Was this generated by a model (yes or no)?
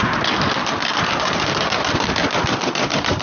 no